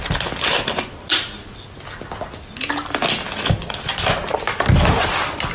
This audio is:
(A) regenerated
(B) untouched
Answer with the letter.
B